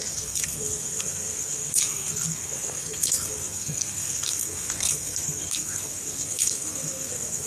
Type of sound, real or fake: fake